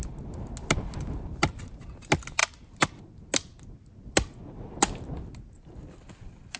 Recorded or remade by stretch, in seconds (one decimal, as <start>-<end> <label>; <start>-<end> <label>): 0.0-6.6 recorded